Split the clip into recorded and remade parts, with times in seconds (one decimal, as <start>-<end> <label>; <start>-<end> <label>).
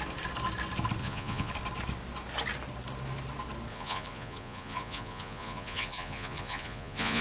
0.0-1.0 recorded; 1.0-1.5 remade; 1.5-3.7 recorded; 3.7-7.2 remade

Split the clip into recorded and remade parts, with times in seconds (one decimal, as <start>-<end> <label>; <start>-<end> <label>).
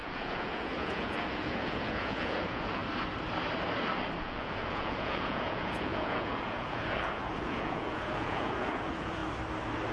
0.0-2.8 remade; 2.8-4.2 recorded; 4.2-9.2 remade; 9.2-9.9 recorded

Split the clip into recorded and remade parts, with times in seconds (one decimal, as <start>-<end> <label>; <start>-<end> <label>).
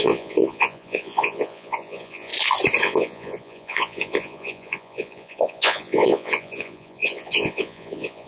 0.0-2.3 remade; 2.3-2.8 recorded; 2.8-8.3 remade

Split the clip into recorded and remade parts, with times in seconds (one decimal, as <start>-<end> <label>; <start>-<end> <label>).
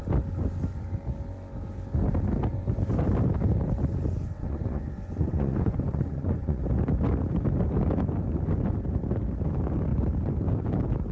0.0-4.4 recorded; 4.4-6.6 remade; 6.6-11.1 recorded